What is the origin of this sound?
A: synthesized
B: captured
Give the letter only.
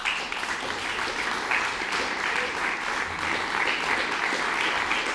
B